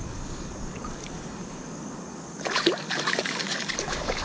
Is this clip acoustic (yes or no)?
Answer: no